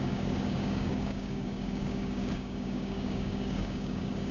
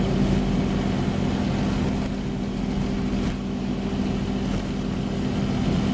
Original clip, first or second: second